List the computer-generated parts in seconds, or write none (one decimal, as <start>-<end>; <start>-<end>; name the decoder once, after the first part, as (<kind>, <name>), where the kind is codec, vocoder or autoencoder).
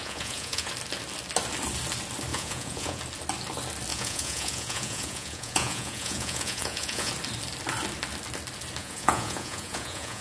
0.0-0.7 (vocoder, Vocos); 2.3-3.0; 3.9-7.1; 8.8-10.2